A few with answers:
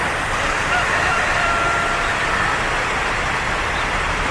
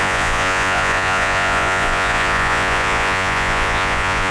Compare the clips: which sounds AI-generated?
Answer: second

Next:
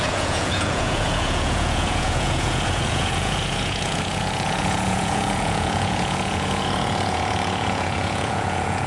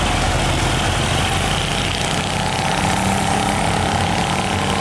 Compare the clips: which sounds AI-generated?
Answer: first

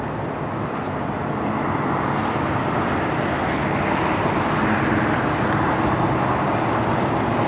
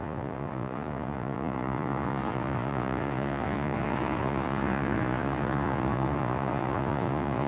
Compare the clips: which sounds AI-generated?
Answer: second